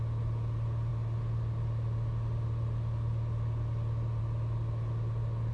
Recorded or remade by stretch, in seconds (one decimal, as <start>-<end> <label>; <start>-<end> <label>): 0.0-5.5 recorded